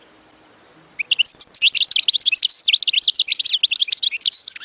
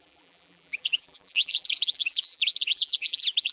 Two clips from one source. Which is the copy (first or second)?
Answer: second